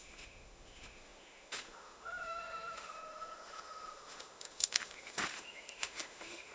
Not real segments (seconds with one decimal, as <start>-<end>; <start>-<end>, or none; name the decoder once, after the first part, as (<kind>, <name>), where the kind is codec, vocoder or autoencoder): 0.0-6.5 (autoencoder, DAC-VAE)